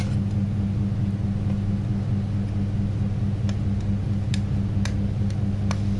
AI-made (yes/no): no